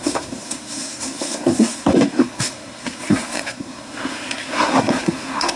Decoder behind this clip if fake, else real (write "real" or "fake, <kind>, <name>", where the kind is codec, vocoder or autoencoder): fake, codec, SNAC